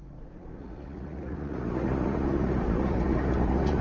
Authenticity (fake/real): fake